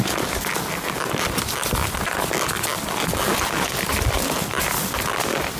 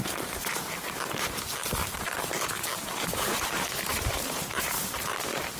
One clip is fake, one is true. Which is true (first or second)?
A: first